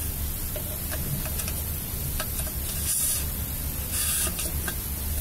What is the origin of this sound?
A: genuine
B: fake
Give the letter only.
A